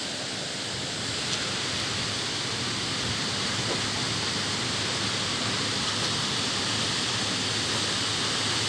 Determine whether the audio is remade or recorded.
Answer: recorded